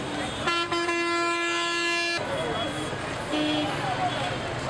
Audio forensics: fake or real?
real